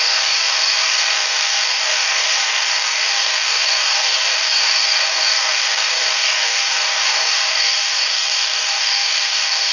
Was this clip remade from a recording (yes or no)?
yes